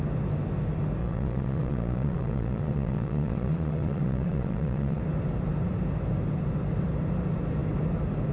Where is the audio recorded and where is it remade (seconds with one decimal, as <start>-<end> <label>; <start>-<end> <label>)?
0.0-1.0 recorded; 1.0-5.0 remade; 5.0-8.3 recorded